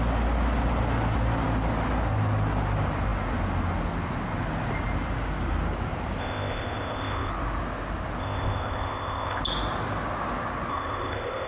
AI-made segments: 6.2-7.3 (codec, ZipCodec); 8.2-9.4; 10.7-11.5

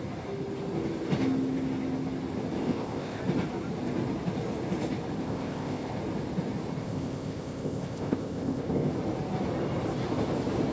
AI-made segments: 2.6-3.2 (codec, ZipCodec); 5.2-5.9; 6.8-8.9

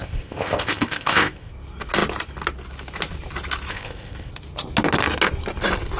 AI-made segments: 0.0-1.5 (codec, ZipCodec); 3.7-4.3

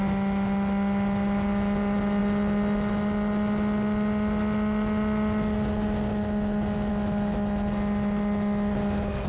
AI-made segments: none

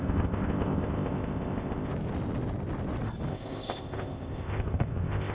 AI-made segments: 0.0-1.9 (codec, ZipCodec); 3.3-5.3

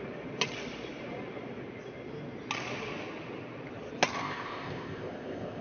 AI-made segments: 4.2-5.6 (codec, ZipCodec)